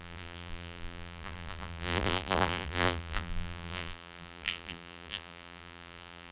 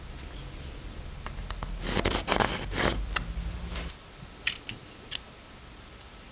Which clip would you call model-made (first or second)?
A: first